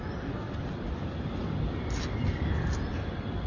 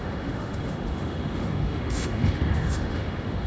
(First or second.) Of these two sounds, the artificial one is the second